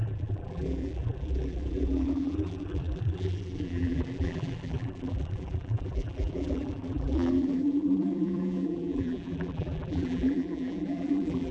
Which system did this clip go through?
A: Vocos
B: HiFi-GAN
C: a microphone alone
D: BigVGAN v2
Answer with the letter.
D